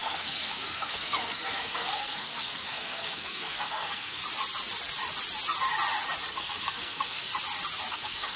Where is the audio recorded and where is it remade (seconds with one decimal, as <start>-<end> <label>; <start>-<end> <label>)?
0.0-4.2 remade; 4.2-6.3 recorded; 6.3-7.3 remade; 7.3-7.9 recorded; 7.9-8.4 remade